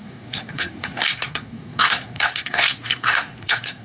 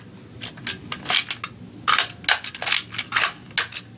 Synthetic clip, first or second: first